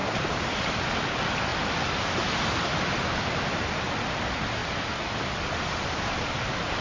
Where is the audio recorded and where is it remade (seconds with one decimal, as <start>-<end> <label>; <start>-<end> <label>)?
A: 0.0-0.8 remade; 0.8-4.6 recorded; 4.6-6.8 remade